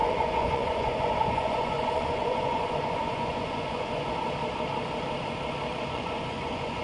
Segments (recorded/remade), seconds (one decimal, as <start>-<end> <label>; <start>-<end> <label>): 0.0-4.1 remade; 4.1-5.9 recorded; 5.9-6.8 remade

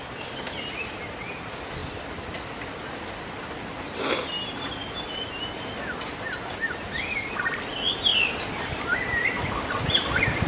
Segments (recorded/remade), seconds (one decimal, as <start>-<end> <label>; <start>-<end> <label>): 0.0-10.5 recorded

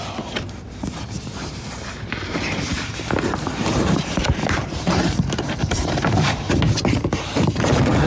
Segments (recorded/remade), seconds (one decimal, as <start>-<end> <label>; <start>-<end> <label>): 0.0-8.1 remade

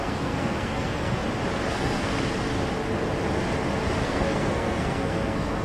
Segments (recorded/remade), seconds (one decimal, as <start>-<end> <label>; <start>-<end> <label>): 0.0-1.2 remade; 1.2-1.7 recorded; 1.7-2.1 remade; 2.1-3.9 recorded; 3.9-5.6 remade

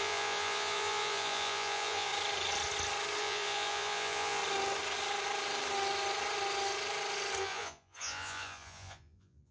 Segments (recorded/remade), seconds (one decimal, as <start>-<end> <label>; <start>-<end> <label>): 0.0-2.1 remade; 2.1-3.2 recorded; 3.2-4.4 remade; 4.4-7.4 recorded; 7.4-9.5 remade

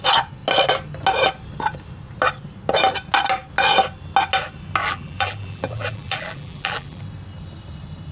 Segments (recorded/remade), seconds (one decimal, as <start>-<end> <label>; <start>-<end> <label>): 0.0-4.8 recorded; 4.8-7.0 remade; 7.0-8.1 recorded